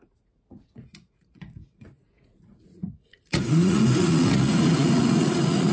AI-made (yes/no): yes